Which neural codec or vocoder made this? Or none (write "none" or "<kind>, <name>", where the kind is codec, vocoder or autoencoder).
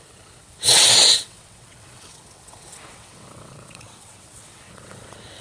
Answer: vocoder, WaveNeXt